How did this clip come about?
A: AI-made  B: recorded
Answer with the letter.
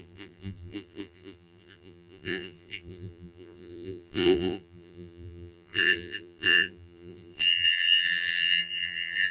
A